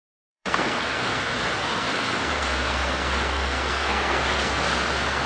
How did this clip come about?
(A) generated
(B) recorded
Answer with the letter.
A